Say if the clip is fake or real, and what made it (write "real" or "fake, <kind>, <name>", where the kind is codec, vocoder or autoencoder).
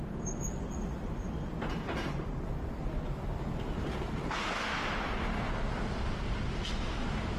real